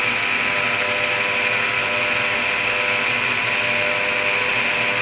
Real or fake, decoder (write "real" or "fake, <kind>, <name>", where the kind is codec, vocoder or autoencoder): real